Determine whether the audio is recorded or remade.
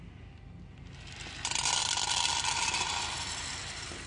recorded